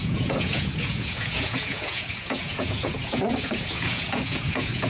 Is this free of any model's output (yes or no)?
no